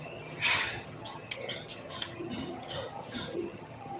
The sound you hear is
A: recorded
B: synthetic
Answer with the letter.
B